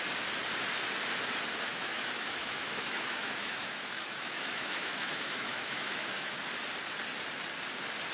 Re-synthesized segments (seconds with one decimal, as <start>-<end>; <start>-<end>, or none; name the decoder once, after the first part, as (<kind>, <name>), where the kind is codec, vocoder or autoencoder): 1.7-6.4 (autoencoder, DAC-VAE)